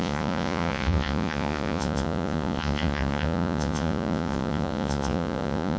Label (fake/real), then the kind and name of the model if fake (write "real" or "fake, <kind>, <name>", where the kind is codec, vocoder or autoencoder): fake, vocoder, Vocos